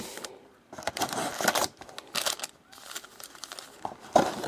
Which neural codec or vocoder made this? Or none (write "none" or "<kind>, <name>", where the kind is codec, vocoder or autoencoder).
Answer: none